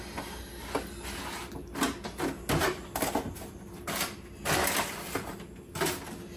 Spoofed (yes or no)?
no